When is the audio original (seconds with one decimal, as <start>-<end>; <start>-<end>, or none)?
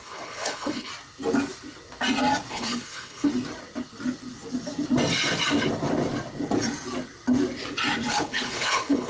0.9-2.5; 3.3-8.1